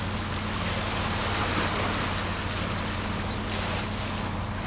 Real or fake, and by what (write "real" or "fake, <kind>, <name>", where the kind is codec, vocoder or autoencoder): real